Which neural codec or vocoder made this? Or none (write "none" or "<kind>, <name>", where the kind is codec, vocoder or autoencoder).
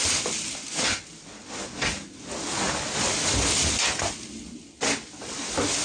none